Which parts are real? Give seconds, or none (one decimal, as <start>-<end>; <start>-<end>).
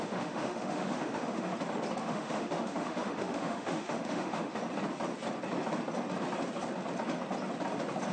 1.5-2.0; 4.6-8.1